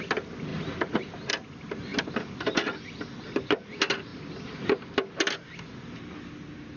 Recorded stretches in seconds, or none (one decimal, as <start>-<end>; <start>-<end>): 0.0-0.5; 1.3-6.8